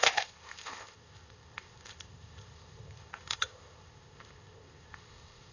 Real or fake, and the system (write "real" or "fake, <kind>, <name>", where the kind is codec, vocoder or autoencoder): fake, codec, ZipCodec